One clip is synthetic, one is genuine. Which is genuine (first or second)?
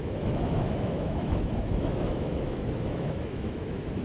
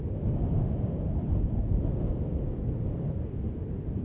second